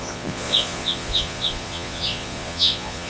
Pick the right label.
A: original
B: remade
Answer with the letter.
B